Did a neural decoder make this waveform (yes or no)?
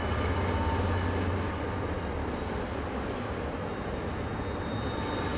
no